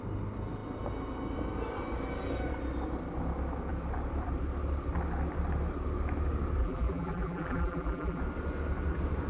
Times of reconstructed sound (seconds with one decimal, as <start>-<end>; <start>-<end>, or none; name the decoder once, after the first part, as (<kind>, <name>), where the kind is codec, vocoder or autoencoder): 6.6-8.2 (vocoder, BigVGAN v2)